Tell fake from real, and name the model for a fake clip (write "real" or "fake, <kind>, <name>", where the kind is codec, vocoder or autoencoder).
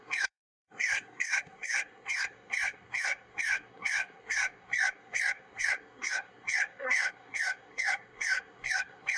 fake, codec, SNAC